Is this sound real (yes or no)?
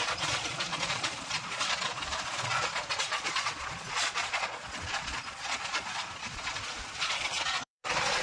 no